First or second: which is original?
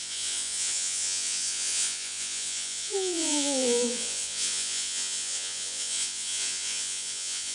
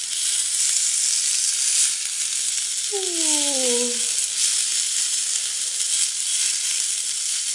second